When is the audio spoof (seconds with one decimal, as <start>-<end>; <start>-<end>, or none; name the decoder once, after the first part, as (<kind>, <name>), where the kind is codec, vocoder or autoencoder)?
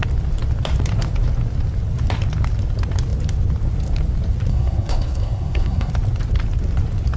4.5-5.9 (codec, SNAC)